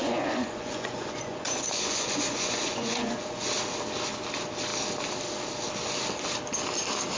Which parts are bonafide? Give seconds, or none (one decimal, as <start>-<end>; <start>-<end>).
3.5-7.2